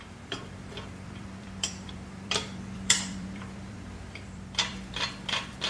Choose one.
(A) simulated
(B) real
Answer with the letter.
A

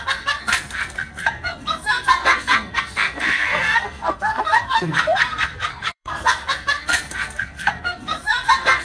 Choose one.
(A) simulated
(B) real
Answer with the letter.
A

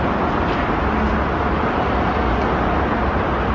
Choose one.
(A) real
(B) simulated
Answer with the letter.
A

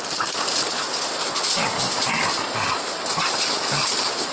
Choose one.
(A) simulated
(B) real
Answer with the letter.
B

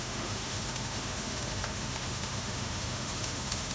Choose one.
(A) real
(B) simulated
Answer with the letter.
B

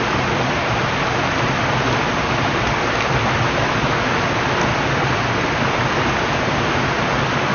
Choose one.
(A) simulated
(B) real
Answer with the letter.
B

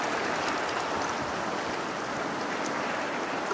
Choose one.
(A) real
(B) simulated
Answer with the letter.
A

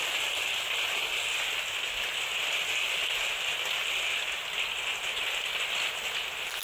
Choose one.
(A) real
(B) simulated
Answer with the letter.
A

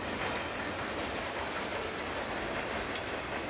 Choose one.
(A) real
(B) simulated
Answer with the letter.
A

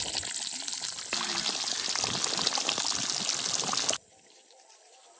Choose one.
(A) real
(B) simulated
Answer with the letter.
A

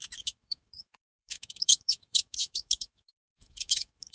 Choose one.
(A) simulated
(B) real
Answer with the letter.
A